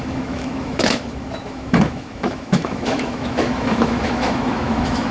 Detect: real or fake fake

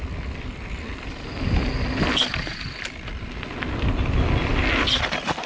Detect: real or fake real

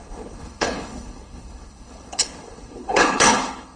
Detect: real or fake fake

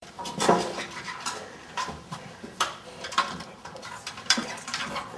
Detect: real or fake fake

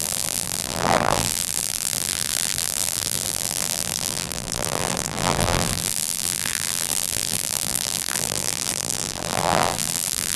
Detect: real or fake fake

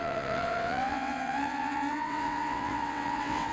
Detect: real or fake fake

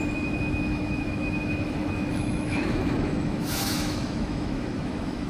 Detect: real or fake fake